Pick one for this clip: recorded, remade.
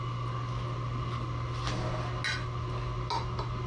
recorded